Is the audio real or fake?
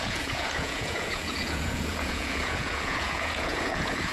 fake